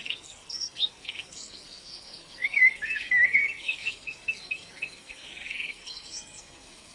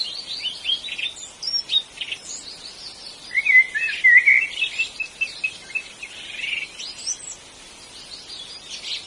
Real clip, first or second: second